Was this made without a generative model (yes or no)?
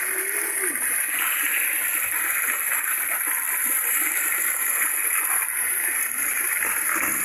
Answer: yes